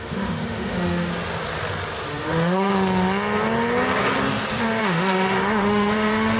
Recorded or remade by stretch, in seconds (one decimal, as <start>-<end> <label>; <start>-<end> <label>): 0.0-1.1 remade; 1.1-2.1 recorded; 2.1-2.7 remade; 2.7-4.8 recorded; 4.8-6.4 remade